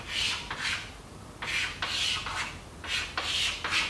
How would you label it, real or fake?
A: real